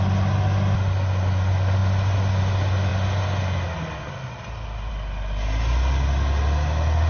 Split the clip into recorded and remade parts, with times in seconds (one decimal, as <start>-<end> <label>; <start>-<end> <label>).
0.0-7.1 recorded